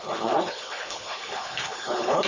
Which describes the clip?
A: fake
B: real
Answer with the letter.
A